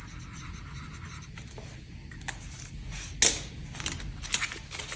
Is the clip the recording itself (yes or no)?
yes